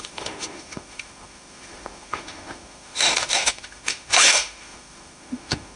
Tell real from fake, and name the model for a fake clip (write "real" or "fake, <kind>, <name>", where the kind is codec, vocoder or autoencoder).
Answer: fake, autoencoder, DAC-VAE